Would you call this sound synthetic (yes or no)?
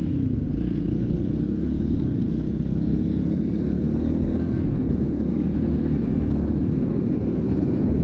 yes